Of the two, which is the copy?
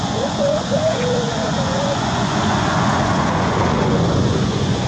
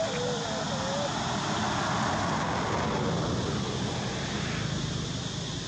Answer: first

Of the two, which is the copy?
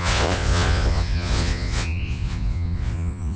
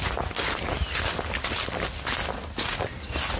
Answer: first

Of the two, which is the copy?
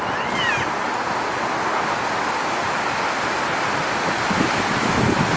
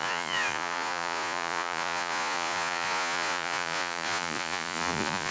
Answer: second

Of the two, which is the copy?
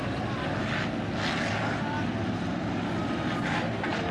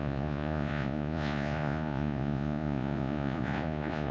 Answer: second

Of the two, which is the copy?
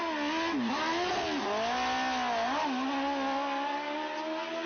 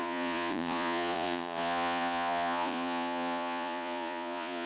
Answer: second